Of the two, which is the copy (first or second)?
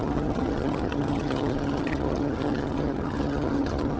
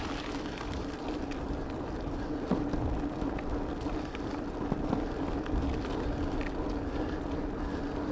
first